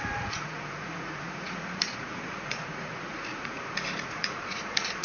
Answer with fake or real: fake